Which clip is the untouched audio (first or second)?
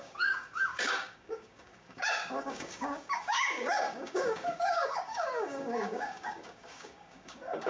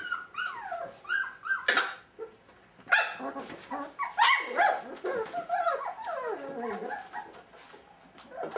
second